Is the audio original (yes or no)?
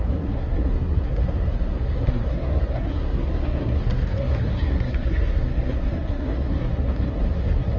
no